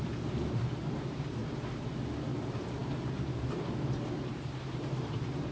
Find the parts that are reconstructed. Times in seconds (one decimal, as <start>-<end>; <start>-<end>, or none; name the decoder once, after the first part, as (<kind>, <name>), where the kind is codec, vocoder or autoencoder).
0.0-1.4 (vocoder, BigVGAN v2); 2.4-5.5